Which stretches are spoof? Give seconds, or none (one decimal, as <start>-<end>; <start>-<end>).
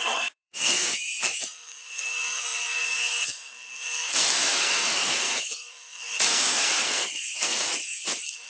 0.0-8.5